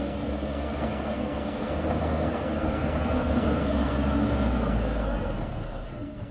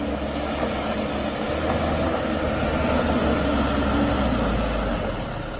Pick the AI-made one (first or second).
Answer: first